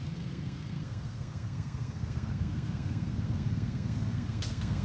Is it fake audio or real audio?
fake